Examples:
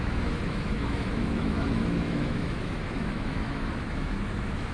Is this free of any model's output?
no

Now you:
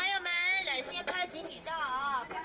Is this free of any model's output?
yes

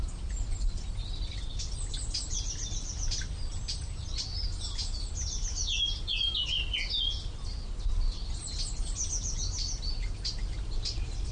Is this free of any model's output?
yes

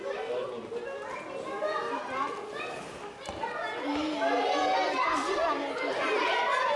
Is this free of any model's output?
yes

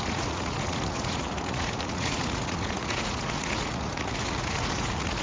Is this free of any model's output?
no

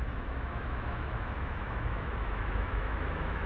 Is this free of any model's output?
no